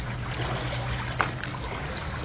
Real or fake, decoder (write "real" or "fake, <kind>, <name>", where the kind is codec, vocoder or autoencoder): real